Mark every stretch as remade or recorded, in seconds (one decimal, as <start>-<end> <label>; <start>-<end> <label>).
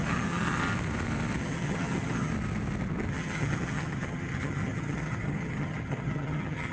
0.0-0.6 remade; 0.6-1.4 recorded; 1.4-2.3 remade; 2.3-3.1 recorded; 3.1-6.7 remade